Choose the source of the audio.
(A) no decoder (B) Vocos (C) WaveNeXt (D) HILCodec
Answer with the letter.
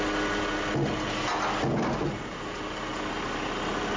A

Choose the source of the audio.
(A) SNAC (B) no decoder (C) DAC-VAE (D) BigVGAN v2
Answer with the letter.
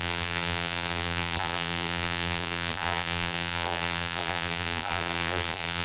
D